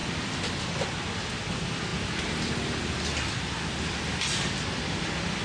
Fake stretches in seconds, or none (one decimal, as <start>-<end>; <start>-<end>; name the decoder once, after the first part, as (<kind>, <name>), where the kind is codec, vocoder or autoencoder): none